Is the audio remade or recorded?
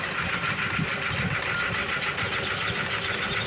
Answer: recorded